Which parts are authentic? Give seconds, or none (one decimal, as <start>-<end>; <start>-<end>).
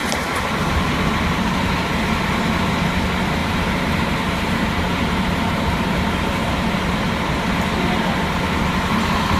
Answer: 0.0-3.4; 7.0-9.4